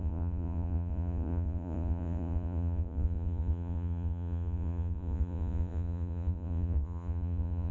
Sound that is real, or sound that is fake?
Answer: fake